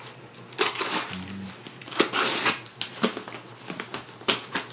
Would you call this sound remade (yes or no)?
no